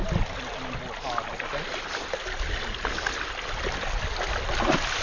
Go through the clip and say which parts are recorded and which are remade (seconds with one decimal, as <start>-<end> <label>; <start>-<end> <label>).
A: 0.0-5.0 recorded